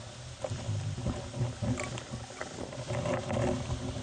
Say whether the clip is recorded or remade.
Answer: recorded